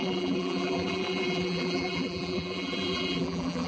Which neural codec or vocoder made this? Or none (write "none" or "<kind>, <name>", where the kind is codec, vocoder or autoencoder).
vocoder, BigVGAN v2